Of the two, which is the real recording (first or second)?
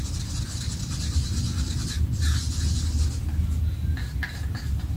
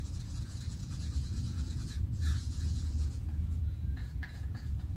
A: first